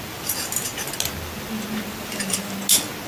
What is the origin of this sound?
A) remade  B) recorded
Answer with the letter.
B